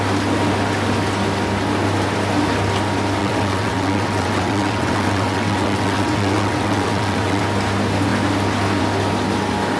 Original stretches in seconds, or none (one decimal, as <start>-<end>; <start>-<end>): 0.0-3.2; 7.4-9.8